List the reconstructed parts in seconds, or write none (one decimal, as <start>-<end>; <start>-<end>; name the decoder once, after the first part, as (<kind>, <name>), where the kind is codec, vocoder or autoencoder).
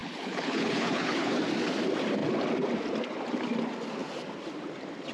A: 0.0-1.4 (codec, HILCodec)